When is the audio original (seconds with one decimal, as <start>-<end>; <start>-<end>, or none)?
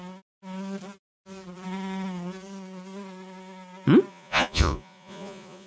0.0-4.1